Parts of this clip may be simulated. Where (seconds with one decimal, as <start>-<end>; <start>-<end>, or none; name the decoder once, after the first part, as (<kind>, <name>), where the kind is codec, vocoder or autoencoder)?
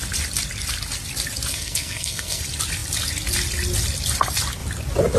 1.5-2.4 (codec, SNAC)